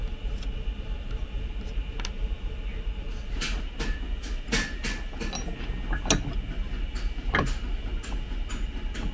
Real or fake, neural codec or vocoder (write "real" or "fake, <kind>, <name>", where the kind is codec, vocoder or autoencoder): real